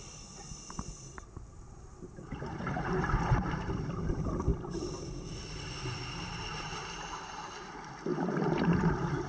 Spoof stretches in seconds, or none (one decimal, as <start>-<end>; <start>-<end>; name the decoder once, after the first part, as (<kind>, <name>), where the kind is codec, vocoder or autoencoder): 1.5-4.1 (vocoder, BigVGAN v2); 8.1-9.3